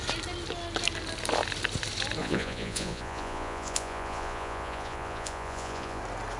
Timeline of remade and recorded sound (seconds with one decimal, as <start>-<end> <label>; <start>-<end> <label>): 0.0-2.2 recorded; 2.2-6.0 remade; 6.0-6.4 recorded